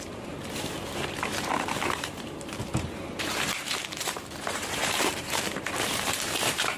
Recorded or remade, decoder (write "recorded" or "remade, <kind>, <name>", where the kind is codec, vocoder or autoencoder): remade, vocoder, BigVGAN v2